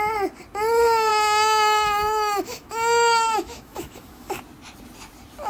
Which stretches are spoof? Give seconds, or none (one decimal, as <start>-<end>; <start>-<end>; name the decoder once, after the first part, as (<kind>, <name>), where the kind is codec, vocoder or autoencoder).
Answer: 1.1-4.4 (autoencoder, DAC-VAE)